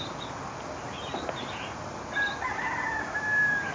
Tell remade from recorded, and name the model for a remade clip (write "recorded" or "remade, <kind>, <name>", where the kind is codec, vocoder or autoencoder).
recorded